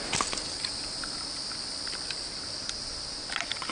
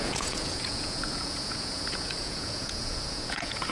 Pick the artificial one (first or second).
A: second